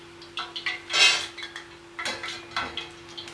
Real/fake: real